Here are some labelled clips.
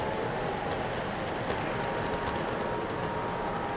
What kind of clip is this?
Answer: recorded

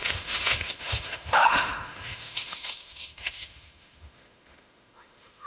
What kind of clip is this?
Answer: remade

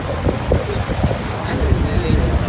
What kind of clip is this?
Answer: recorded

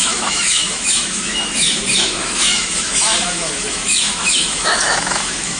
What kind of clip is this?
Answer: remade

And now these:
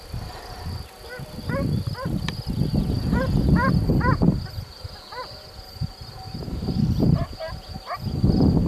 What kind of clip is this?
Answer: recorded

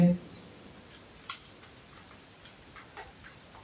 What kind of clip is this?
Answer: recorded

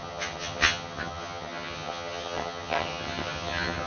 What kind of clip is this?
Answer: remade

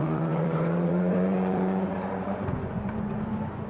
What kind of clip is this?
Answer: remade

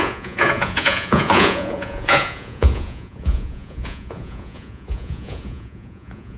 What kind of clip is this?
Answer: remade